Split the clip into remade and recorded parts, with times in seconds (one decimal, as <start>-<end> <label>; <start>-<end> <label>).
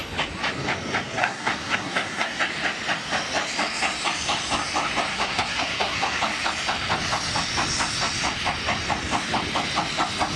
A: 0.0-1.2 recorded; 1.2-2.4 remade; 2.4-5.1 recorded; 5.1-6.2 remade; 6.2-10.4 recorded